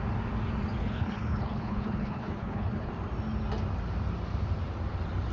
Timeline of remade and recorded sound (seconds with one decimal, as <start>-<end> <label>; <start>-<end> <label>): 0.0-0.8 recorded; 0.8-2.9 remade; 2.9-5.3 recorded